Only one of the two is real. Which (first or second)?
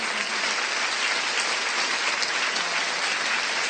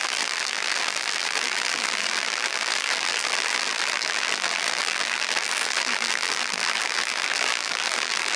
first